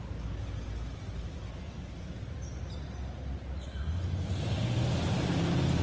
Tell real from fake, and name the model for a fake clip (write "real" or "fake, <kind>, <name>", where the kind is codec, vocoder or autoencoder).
real